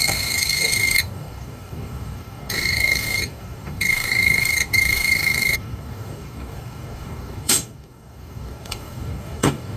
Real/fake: fake